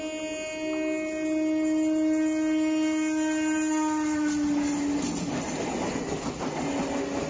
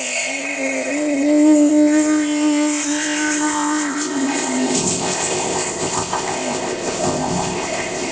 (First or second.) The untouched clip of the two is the first